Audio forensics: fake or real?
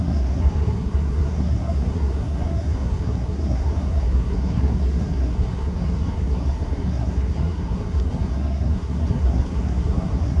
fake